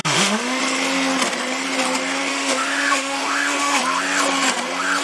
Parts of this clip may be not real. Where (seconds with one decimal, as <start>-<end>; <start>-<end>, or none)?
0.0-0.6; 2.3-3.8